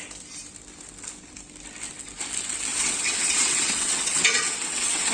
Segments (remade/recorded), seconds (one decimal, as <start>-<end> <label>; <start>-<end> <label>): 0.0-2.7 recorded; 2.7-5.1 remade